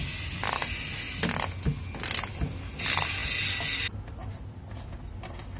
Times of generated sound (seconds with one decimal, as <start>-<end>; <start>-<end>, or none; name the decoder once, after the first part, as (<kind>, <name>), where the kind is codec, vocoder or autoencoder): none